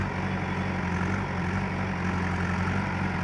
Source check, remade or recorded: recorded